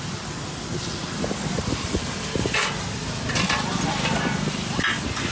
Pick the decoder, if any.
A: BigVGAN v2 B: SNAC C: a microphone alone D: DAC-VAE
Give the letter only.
C